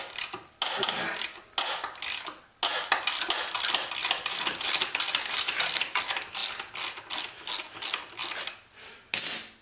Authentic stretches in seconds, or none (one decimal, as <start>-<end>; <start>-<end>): 0.0-9.6